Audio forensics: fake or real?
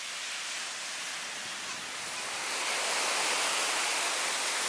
real